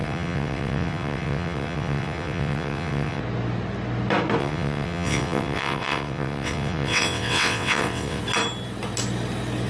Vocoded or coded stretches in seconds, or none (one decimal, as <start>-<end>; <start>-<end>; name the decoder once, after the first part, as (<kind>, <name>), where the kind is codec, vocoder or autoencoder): 0.0-3.2 (vocoder, WaveNeXt); 4.4-8.2